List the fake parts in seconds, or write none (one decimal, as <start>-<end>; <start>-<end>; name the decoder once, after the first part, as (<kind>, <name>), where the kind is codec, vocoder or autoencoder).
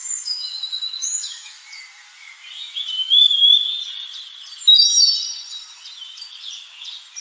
0.0-1.5 (autoencoder, DAC-VAE); 3.0-3.6